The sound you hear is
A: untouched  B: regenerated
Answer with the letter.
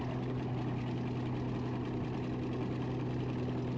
A